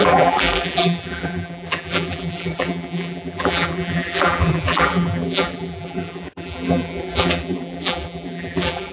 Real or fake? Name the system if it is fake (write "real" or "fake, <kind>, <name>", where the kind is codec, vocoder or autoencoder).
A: fake, vocoder, BigVGAN v2